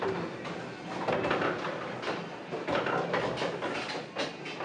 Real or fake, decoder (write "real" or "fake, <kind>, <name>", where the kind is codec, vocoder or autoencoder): real